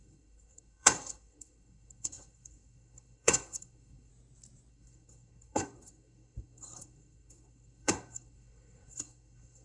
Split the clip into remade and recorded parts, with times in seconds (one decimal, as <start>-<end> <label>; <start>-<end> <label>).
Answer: 0.0-4.1 remade; 4.1-4.7 recorded; 4.7-9.6 remade